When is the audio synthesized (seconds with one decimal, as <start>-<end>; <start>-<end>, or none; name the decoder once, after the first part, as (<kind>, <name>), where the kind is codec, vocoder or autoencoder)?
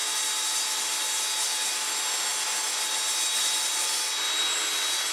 none